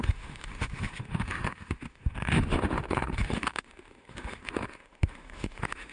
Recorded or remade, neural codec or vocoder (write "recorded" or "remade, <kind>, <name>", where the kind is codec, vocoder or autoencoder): remade, autoencoder, DAC-VAE